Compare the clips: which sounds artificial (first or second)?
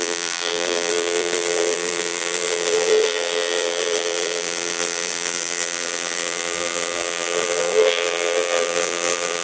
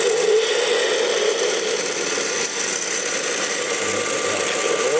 first